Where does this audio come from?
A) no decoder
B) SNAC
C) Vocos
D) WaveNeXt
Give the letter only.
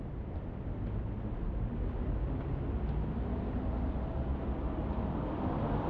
A